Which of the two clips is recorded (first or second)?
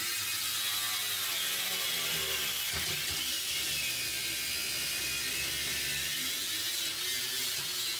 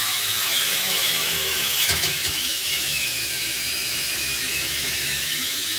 first